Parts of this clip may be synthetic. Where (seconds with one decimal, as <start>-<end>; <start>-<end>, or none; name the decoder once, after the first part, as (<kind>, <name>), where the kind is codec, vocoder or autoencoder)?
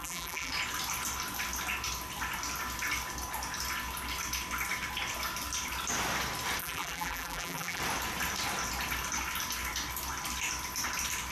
0.0-0.5 (vocoder, BigVGAN v2); 6.6-7.8